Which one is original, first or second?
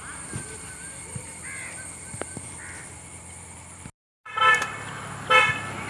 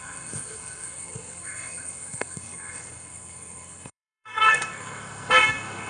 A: first